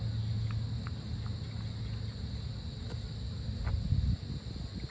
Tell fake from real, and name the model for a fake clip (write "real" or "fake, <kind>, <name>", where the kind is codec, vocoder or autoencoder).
real